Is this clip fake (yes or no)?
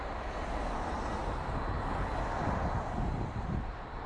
no